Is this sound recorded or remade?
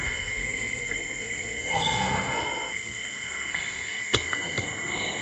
remade